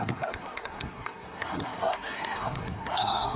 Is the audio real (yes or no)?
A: no